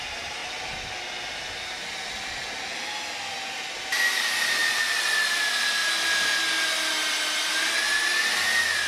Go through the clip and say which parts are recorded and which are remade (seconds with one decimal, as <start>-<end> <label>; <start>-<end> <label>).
0.0-8.9 recorded